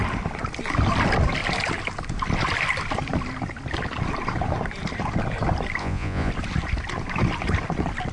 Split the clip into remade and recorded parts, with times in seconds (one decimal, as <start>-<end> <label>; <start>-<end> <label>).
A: 0.0-5.8 recorded; 5.8-6.3 remade; 6.3-8.1 recorded